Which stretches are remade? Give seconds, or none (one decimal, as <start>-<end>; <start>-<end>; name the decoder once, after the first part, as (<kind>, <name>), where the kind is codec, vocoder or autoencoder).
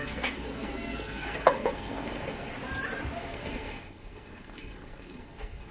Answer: 0.0-2.5 (codec, SNAC); 3.2-5.7